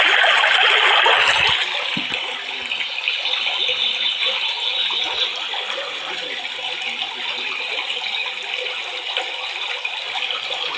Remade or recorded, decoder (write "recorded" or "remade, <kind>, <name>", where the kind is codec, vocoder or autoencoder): recorded